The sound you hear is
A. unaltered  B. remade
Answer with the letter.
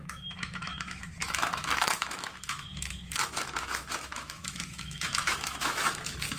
B